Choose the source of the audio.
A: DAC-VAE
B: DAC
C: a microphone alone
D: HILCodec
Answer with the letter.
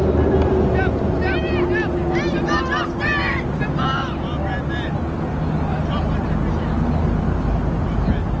C